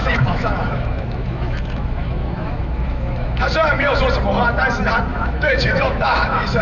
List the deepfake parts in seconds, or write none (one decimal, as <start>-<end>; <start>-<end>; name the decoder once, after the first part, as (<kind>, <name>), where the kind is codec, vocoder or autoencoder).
0.0-4.0 (autoencoder, DAC-VAE); 5.1-6.6